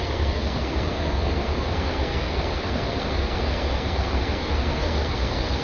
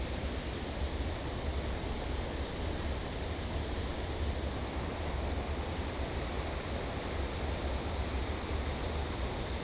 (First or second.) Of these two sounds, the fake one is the first